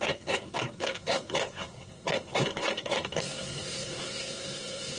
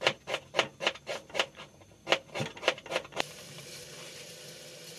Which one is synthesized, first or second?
first